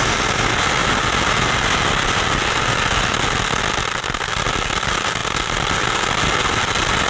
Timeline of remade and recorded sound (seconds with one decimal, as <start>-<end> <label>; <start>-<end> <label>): 0.0-7.1 recorded